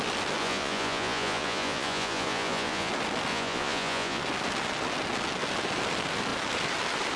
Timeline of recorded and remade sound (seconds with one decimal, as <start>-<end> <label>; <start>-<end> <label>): 0.0-0.4 recorded; 0.4-2.9 remade; 2.9-3.3 recorded; 3.3-4.2 remade; 4.2-7.2 recorded